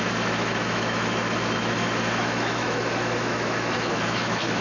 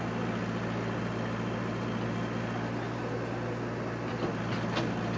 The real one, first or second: second